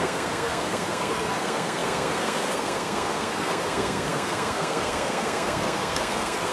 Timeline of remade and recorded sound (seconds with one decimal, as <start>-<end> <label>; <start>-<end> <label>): 0.0-6.5 remade